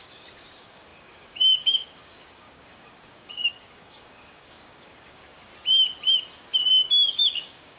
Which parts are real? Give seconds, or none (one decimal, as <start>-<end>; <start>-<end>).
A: 5.5-6.7